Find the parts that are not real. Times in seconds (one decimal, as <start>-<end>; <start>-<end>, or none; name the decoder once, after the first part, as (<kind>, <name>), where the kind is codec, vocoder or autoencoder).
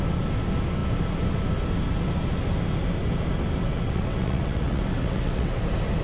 3.6-5.6 (vocoder, WaveNeXt)